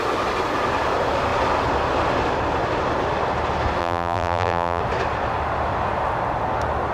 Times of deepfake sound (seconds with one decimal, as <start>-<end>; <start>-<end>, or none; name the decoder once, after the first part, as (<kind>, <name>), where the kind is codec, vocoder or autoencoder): 3.8-4.8 (vocoder, BigVGAN v2)